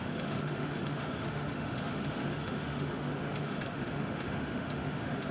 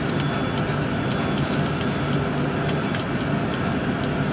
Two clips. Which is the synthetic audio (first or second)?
first